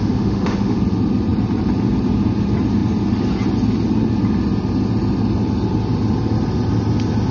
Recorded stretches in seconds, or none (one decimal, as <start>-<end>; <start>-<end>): 0.8-7.3